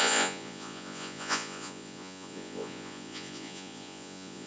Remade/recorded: remade